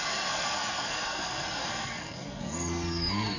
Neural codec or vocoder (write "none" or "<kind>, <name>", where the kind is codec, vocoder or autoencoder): codec, SNAC